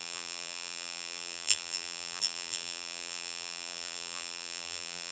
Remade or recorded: remade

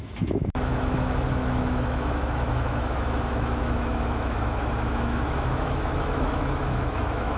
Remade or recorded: remade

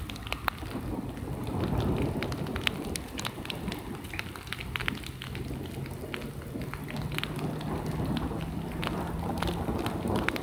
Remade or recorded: recorded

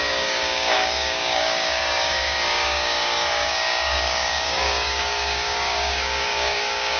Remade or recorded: remade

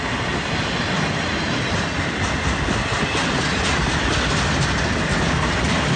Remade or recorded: recorded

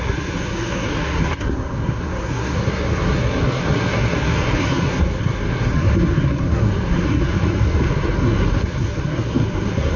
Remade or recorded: remade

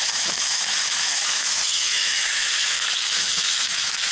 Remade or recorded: remade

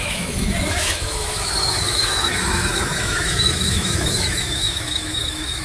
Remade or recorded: remade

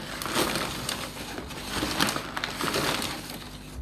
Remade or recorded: recorded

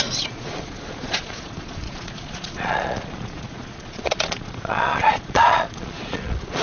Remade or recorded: remade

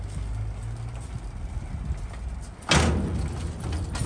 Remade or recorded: recorded